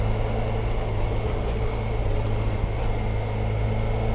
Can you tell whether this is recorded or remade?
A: recorded